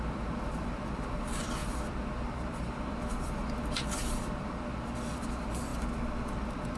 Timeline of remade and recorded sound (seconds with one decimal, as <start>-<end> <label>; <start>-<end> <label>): 0.0-5.7 remade; 5.7-6.3 recorded; 6.3-6.8 remade